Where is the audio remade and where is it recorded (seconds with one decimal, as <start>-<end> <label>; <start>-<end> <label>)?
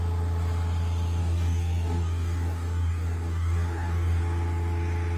0.0-1.2 recorded; 1.2-4.2 remade; 4.2-5.2 recorded